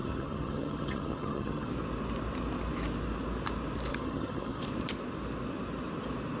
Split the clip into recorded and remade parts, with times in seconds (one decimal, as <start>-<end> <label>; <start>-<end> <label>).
0.0-1.7 remade; 1.7-3.9 recorded; 3.9-4.6 remade; 4.6-6.4 recorded